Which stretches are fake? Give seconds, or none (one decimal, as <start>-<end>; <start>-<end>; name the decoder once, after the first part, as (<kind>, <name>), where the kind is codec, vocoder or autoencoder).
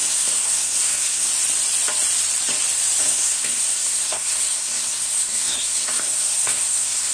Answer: 0.0-1.3 (codec, SNAC); 3.0-7.1